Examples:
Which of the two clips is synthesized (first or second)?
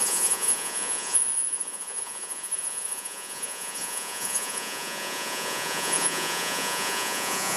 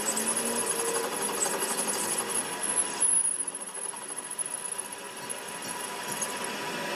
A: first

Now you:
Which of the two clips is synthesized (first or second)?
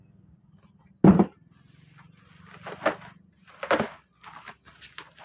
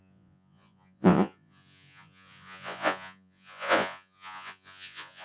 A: second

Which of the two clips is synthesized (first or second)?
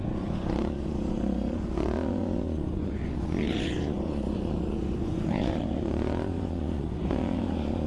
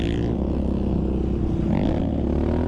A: first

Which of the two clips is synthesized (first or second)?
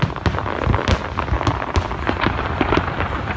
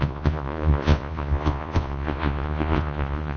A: second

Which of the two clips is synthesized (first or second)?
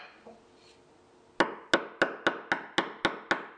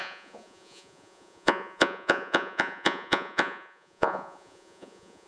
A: second